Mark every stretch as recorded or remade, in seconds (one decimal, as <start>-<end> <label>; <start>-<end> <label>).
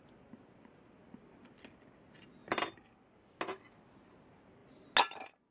0.0-5.5 recorded